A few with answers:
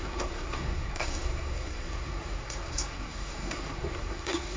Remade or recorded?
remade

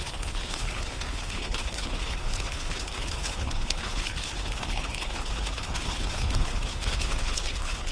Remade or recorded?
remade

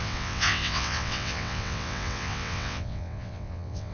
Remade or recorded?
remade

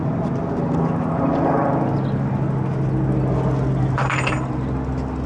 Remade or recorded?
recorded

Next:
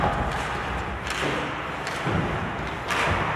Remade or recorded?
recorded